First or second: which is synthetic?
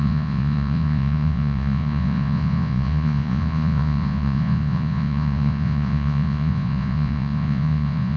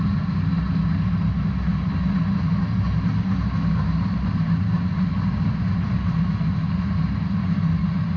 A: first